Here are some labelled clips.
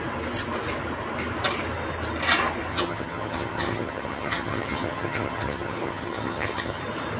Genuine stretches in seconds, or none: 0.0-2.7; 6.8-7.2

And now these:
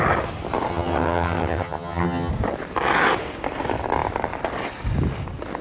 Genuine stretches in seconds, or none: 0.0-0.7; 2.3-5.6

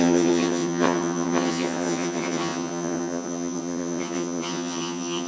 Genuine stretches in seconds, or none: none

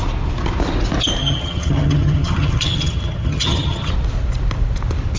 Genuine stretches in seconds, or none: 0.0-1.2; 3.9-5.2

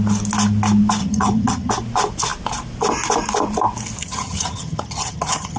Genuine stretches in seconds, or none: 0.0-1.0; 1.7-4.0

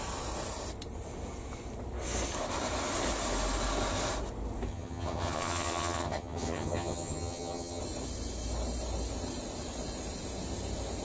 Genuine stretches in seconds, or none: 0.0-4.7; 7.8-11.0